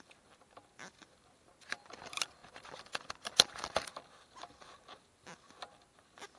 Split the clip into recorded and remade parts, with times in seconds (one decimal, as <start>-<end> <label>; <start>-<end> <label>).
0.0-6.4 recorded